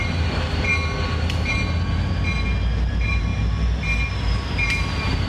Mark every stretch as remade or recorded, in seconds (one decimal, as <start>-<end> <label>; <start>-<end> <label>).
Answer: 0.0-0.7 remade; 0.7-2.9 recorded; 2.9-3.3 remade; 3.3-4.1 recorded; 4.1-5.3 remade